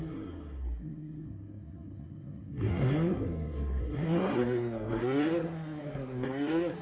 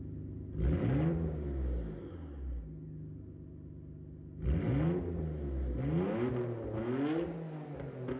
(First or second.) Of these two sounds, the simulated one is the first